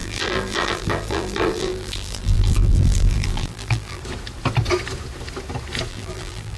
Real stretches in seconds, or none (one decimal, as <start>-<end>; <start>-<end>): 4.0-5.9